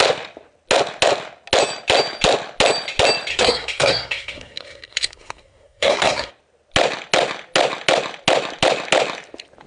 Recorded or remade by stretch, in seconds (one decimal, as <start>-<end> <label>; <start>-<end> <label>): 0.0-3.3 recorded; 3.3-6.3 remade; 6.3-9.7 recorded